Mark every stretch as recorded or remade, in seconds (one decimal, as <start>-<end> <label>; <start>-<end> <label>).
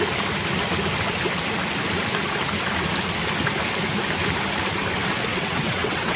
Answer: 0.0-5.3 recorded; 5.3-6.2 remade